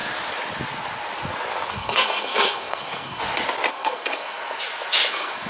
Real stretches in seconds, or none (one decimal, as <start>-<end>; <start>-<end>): 0.0-1.7; 3.2-3.7; 4.4-5.1

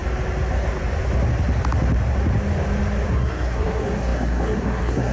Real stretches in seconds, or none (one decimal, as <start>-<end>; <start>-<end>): 0.0-3.1

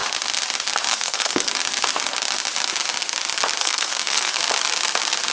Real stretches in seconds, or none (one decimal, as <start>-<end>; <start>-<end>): 0.0-0.9; 1.5-3.6; 4.4-5.3

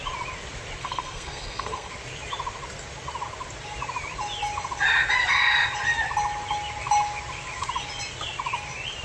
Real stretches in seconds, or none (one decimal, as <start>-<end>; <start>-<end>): 0.0-0.8; 1.9-9.0